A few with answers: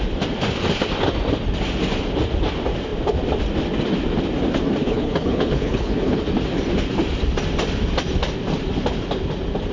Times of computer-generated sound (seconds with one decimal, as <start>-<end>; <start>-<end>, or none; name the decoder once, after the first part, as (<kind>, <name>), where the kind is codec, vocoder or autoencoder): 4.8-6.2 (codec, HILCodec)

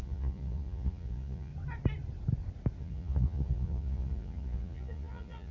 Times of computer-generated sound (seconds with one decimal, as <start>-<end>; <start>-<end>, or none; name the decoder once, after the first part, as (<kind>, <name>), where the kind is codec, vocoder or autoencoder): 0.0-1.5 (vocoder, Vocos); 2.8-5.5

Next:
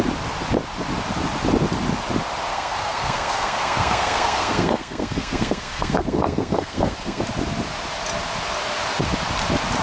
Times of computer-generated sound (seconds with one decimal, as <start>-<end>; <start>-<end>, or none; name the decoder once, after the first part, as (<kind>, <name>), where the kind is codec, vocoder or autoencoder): 2.5-7.2 (codec, SNAC)

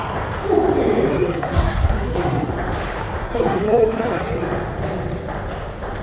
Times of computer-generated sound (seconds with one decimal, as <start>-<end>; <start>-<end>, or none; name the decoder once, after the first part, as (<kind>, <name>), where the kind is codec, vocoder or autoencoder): 1.1-2.5 (codec, SNAC); 3.2-4.4

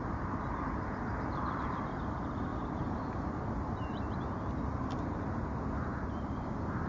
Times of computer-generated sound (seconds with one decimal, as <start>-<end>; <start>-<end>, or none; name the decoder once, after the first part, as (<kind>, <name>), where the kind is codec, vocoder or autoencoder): none

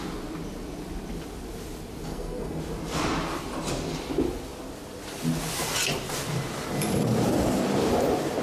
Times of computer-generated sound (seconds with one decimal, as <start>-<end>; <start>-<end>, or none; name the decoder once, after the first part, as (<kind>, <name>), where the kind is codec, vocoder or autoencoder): 2.1-2.6 (codec, SNAC)